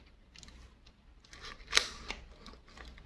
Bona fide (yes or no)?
yes